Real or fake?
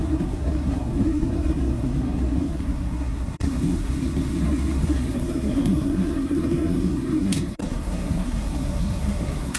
fake